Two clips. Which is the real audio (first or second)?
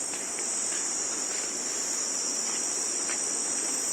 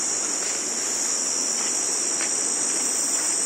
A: second